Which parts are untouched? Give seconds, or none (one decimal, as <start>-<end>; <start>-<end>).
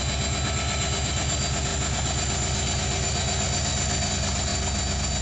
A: 0.0-5.2